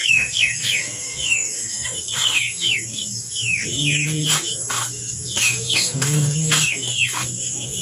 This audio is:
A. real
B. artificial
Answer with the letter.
B